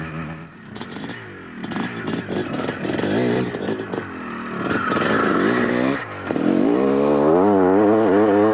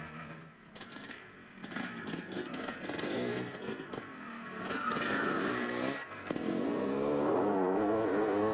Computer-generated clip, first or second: second